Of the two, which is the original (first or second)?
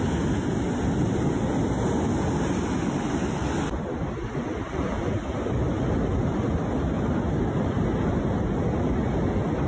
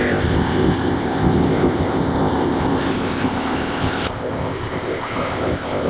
first